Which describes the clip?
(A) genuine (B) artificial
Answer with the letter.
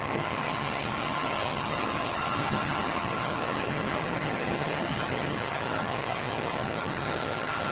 B